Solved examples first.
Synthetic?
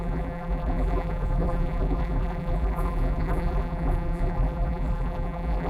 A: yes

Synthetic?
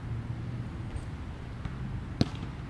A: no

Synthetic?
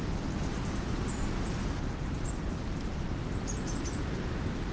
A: no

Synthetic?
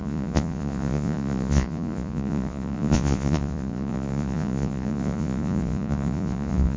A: yes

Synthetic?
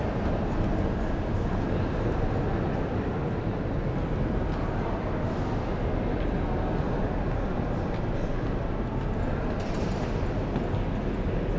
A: no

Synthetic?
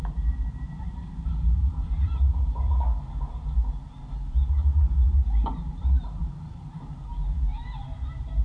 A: yes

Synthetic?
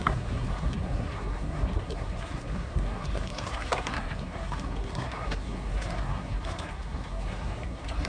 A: yes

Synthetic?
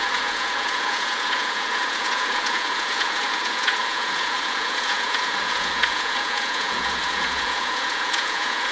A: yes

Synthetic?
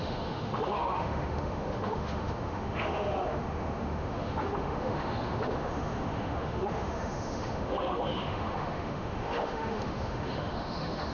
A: yes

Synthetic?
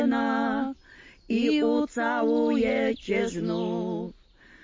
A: no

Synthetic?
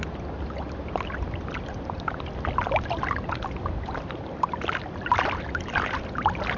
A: no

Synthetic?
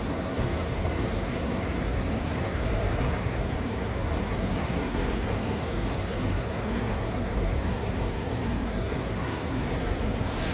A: yes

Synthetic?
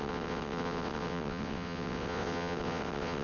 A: yes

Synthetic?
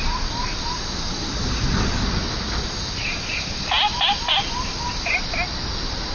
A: no